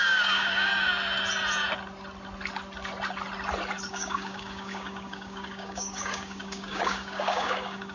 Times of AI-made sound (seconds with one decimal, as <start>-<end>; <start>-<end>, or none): 0.0-0.7; 3.9-7.9